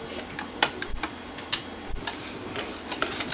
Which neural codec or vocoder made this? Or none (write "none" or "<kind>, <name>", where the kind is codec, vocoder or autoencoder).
none